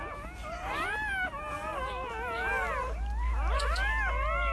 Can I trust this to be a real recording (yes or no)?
yes